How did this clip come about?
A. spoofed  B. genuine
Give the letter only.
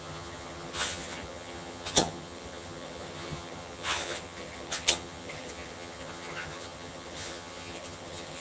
A